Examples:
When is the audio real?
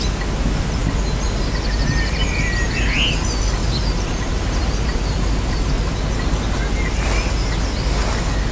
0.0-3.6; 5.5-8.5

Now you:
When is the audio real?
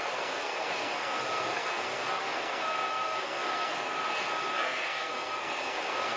none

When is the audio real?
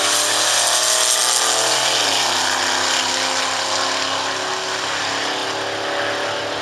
0.0-6.6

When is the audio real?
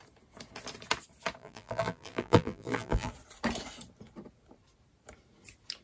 0.0-1.4; 3.1-5.8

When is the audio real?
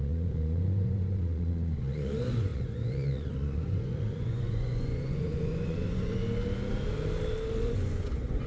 6.2-7.6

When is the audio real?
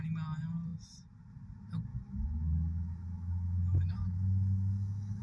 0.0-1.9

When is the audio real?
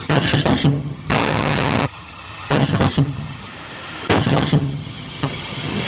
3.5-4.2